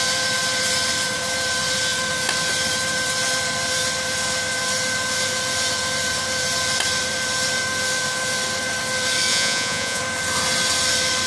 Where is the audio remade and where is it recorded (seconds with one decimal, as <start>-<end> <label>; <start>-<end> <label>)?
0.0-9.3 recorded; 9.3-10.0 remade; 10.0-11.3 recorded